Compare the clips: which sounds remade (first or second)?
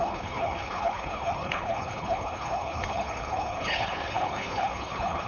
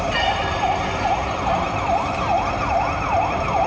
first